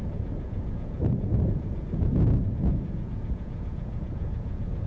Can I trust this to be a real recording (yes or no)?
no